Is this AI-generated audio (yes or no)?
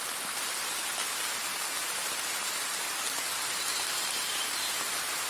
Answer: no